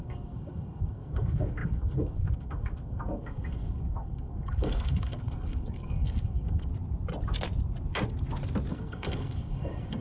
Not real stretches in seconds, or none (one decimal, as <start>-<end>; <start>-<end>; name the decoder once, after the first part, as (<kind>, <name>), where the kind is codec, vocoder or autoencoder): 0.0-6.7 (codec, SNAC); 8.7-10.0